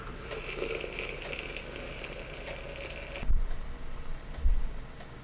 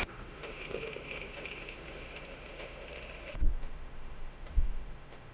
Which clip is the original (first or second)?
first